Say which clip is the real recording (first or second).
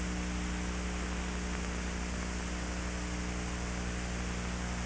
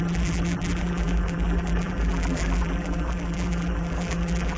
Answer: first